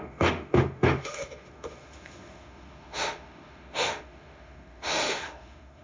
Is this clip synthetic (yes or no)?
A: yes